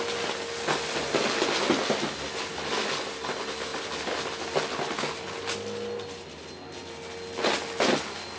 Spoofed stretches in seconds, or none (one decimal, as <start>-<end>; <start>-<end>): none